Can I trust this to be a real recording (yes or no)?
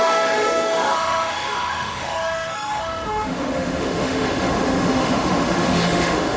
no